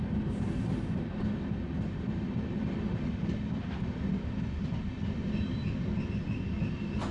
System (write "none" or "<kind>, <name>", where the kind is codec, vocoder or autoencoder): none